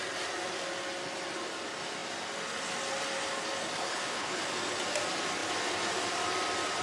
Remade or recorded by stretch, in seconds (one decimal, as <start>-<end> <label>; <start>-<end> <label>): 0.0-3.8 recorded; 3.8-4.4 remade; 4.4-6.8 recorded